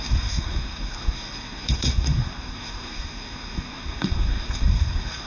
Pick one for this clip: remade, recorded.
remade